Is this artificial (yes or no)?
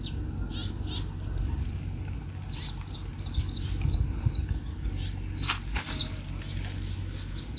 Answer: no